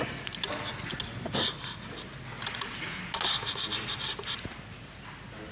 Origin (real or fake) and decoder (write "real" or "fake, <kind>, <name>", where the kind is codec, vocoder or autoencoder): real